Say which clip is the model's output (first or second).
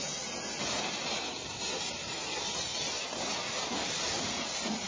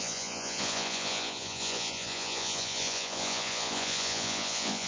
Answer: second